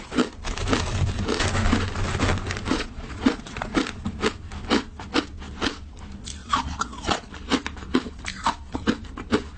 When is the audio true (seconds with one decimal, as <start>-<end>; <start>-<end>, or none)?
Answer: 0.0-2.7; 3.8-6.4; 7.3-9.6